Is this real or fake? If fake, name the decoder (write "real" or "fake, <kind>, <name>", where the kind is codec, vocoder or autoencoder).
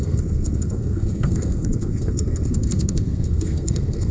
fake, codec, SNAC